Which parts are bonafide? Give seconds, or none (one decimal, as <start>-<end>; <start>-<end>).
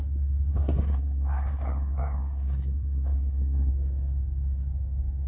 0.0-0.5; 3.7-5.3